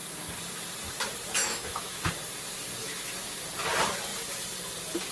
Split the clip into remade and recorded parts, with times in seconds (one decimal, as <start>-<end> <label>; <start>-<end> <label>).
0.0-1.4 recorded; 1.4-2.1 remade; 2.1-2.8 recorded; 2.8-3.4 remade; 3.4-5.1 recorded